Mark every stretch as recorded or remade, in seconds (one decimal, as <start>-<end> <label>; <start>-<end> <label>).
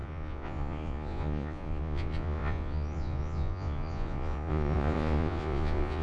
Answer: 0.0-6.0 remade